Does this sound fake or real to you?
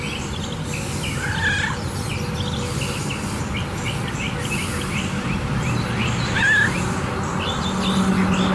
real